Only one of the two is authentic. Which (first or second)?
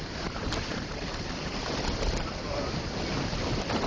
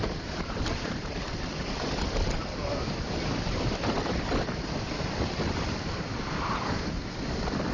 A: first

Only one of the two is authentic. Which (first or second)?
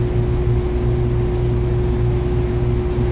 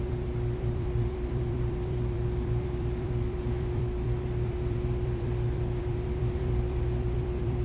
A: first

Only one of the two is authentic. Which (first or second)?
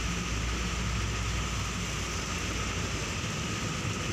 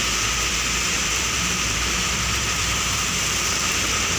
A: first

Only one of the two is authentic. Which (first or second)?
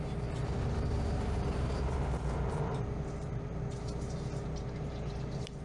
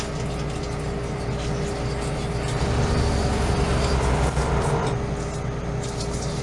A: second